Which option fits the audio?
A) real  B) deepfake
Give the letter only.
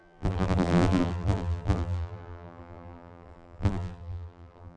B